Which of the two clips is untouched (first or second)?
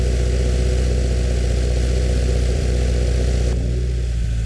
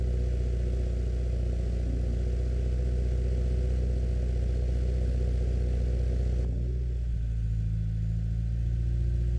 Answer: second